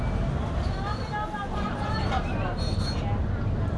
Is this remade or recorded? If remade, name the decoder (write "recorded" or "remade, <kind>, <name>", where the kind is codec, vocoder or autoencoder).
recorded